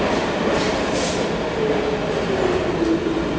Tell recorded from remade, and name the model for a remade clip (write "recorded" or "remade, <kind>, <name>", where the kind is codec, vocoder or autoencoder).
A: recorded